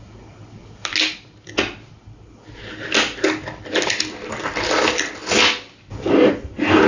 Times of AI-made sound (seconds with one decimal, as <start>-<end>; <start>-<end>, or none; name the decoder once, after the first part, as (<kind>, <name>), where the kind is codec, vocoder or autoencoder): none